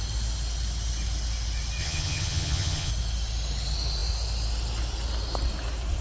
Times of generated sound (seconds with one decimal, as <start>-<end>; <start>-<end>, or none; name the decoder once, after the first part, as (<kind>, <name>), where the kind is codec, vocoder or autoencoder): 1.8-2.9 (vocoder, HiFi-GAN)

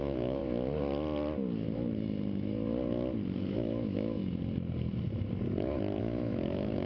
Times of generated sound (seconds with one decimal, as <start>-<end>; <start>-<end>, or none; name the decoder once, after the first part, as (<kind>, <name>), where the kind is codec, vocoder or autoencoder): 0.0-0.4 (autoencoder, DAC-VAE); 3.4-4.2; 6.0-6.9

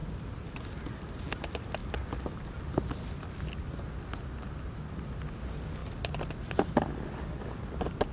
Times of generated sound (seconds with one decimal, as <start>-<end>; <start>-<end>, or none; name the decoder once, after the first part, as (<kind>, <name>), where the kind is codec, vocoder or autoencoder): none

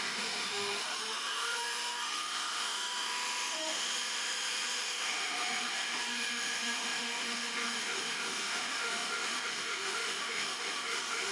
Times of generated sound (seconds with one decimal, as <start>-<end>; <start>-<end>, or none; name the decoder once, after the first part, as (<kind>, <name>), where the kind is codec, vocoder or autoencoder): 0.0-11.3 (autoencoder, DAC-VAE)